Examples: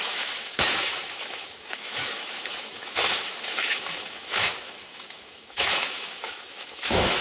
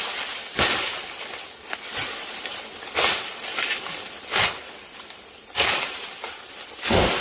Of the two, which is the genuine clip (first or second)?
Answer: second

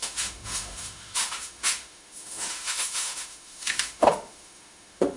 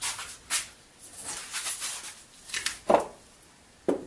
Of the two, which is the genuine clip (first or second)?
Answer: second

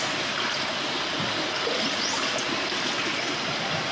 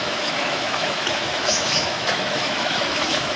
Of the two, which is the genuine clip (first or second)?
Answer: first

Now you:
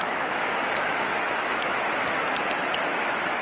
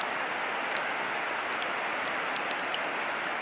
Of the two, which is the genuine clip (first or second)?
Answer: second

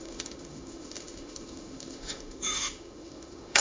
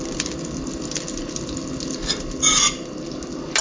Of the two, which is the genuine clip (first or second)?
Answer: second